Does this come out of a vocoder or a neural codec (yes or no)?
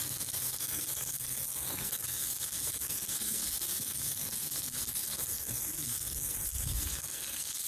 yes